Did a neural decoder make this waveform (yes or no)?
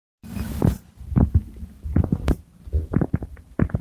no